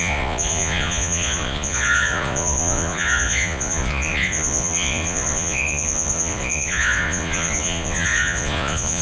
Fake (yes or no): yes